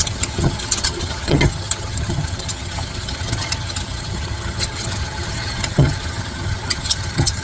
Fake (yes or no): yes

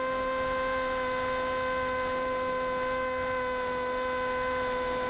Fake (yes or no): no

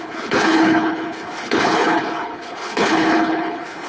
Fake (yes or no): yes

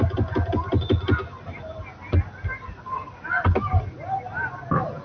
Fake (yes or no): no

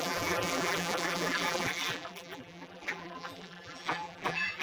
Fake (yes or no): yes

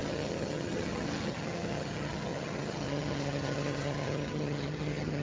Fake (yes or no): yes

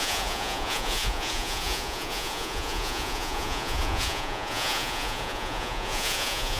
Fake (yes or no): yes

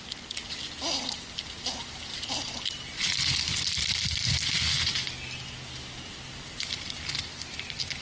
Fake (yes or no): no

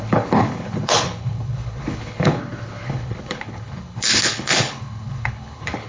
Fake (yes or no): yes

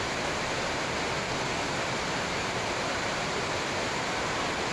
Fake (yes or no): yes